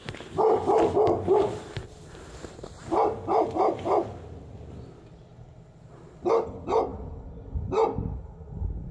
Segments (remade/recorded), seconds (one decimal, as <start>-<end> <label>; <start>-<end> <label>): 0.0-8.9 recorded